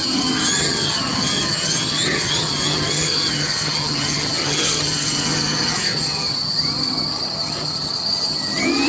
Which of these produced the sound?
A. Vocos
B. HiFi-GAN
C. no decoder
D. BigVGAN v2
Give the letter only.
B